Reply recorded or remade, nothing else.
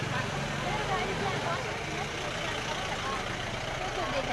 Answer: recorded